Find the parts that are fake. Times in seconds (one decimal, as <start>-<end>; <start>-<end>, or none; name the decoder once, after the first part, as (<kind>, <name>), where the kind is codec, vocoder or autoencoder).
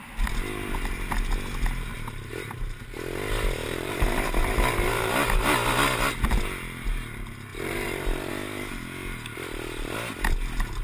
1.9-2.8 (vocoder, BigVGAN v2); 3.6-5.1; 7.5-8.3